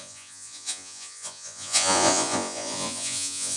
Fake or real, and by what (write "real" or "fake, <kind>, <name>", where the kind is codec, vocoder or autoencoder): fake, vocoder, Vocos